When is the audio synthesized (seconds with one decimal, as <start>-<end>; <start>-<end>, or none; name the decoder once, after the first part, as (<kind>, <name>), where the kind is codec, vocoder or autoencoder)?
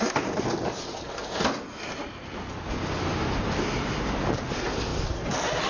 3.1-3.7 (vocoder, BigVGAN v2)